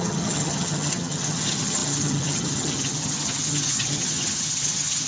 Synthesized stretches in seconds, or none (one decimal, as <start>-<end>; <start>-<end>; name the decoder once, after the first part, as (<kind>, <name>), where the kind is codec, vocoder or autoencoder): 0.0-5.1 (vocoder, HiFi-GAN)